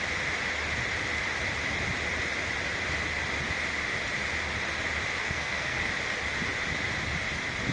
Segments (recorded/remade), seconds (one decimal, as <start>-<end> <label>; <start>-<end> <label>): 0.0-5.2 recorded; 5.2-5.9 remade; 5.9-7.7 recorded